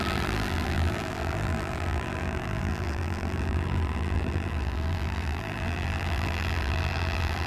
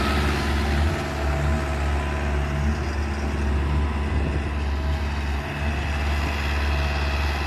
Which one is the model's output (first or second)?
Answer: first